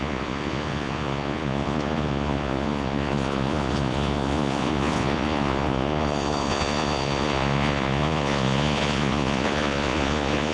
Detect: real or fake fake